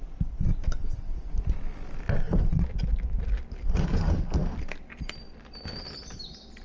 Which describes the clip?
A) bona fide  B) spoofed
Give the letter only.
A